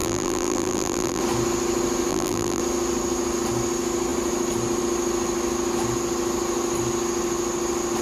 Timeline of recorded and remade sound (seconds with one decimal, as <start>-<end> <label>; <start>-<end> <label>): 0.0-1.2 remade; 1.2-2.1 recorded; 2.1-2.6 remade; 2.6-8.0 recorded